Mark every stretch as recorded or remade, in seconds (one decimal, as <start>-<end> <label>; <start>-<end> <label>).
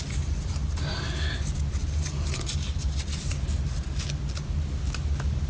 0.0-5.5 recorded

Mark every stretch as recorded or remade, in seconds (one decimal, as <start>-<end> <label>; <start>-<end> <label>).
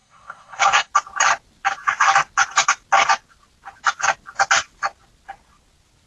0.0-0.9 remade; 0.9-6.1 recorded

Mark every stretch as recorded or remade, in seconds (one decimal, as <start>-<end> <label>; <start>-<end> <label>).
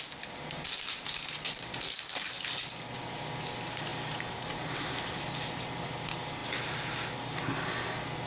0.0-8.3 recorded